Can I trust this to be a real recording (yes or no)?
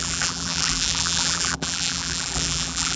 no